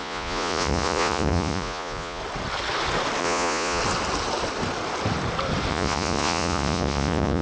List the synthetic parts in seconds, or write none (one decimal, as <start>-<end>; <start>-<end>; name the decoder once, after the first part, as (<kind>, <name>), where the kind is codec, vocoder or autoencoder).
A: 0.0-2.2 (vocoder, Vocos); 3.2-3.8; 5.7-7.4